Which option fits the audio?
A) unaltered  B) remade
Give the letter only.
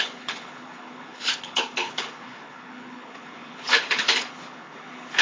B